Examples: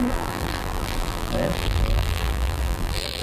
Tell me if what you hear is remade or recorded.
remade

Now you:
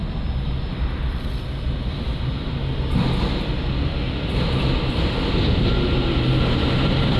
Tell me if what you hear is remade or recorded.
recorded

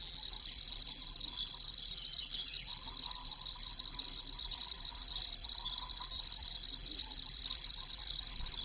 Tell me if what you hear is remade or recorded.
remade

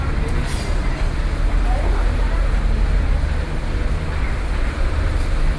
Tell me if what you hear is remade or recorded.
recorded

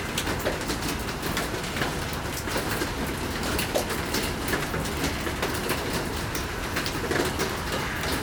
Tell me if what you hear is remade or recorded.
recorded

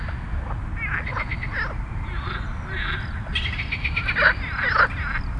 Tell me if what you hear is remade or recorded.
recorded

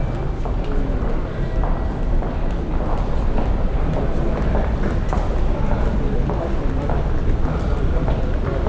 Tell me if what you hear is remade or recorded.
recorded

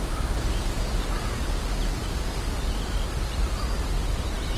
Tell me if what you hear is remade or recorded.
recorded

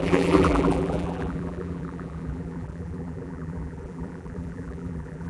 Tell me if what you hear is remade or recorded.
remade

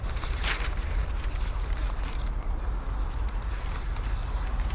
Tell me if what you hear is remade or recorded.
remade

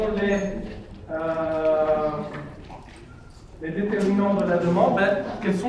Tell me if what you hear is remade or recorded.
remade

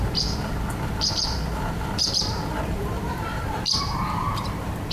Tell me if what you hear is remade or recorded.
remade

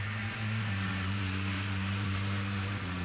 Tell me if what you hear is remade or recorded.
remade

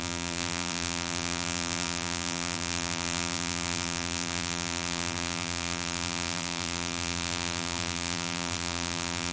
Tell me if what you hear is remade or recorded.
remade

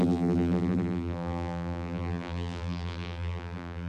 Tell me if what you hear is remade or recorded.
remade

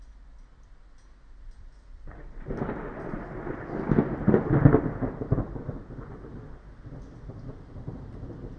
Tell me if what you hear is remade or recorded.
recorded